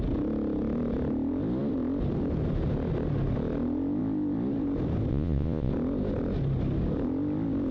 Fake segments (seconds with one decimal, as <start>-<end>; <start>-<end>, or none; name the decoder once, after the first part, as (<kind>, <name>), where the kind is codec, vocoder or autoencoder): 5.1-5.7 (vocoder, Vocos)